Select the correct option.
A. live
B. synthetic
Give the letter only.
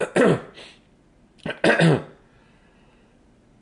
A